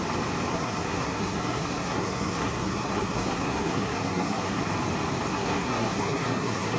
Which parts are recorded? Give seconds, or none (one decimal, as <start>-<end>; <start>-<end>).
0.0-0.5; 4.6-5.3